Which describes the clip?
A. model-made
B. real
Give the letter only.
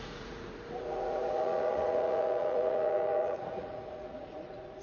A